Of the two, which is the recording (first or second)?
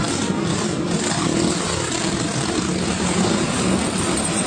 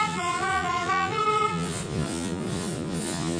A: first